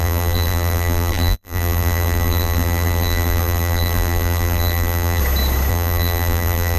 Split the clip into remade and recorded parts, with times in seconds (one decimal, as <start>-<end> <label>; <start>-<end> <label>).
0.0-5.2 remade; 5.2-5.7 recorded; 5.7-6.8 remade